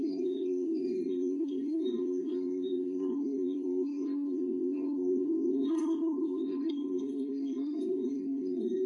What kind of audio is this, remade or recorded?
remade